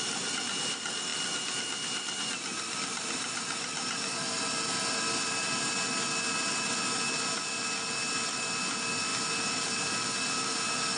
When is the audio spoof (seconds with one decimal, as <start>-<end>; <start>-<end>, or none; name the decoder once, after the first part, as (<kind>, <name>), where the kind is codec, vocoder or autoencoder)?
none